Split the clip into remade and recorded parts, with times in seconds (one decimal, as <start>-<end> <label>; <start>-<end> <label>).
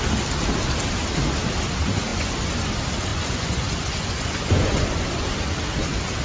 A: 0.0-2.1 recorded; 2.1-2.7 remade; 2.7-3.1 recorded; 3.1-5.3 remade; 5.3-6.2 recorded